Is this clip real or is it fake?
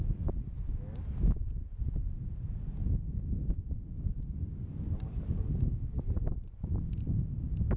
real